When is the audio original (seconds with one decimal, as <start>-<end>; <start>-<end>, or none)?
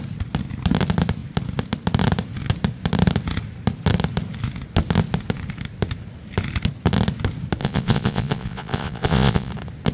0.0-7.6; 9.5-9.9